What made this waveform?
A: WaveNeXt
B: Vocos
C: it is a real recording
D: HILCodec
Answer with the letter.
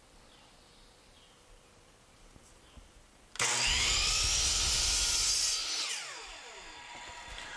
C